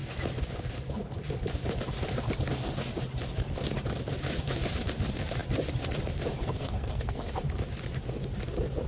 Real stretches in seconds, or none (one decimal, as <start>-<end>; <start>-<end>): 0.0-6.4; 7.3-8.9